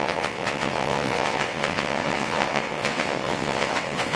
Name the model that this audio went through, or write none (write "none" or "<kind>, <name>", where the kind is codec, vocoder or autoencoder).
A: vocoder, WaveNeXt